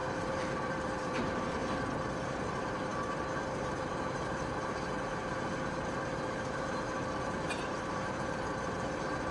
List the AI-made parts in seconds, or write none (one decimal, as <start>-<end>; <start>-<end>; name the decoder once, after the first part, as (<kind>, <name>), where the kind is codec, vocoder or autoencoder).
0.0-1.6 (vocoder, BigVGAN v2); 2.2-9.3